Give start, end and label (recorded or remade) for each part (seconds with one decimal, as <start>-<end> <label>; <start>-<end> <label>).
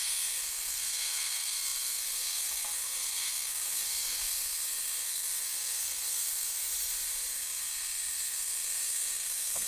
0.0-6.6 remade; 6.6-7.3 recorded; 7.3-9.7 remade